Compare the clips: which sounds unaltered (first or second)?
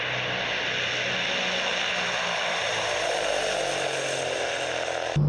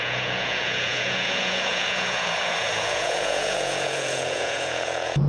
first